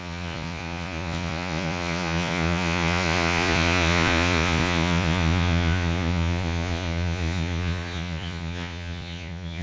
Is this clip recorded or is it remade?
remade